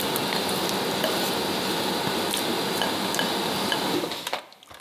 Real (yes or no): yes